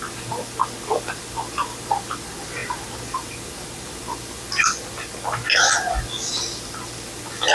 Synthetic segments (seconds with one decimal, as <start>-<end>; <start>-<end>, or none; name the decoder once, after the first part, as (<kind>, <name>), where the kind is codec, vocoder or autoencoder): none